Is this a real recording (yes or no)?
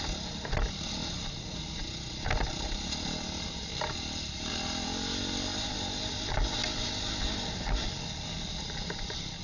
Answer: yes